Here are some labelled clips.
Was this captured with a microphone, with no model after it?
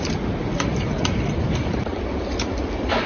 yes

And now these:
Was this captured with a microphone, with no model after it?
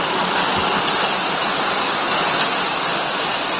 yes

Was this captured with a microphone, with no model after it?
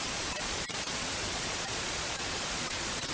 no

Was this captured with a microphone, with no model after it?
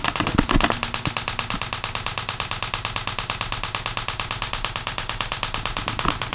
yes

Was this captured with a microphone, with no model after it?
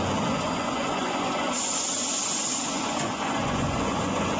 no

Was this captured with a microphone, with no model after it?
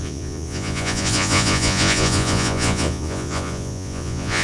no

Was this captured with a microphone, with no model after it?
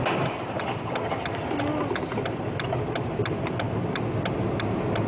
yes